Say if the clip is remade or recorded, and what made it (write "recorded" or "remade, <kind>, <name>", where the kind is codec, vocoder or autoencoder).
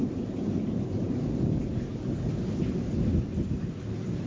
recorded